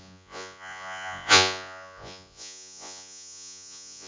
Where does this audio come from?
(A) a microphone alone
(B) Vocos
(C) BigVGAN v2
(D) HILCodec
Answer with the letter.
B